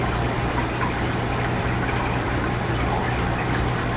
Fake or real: real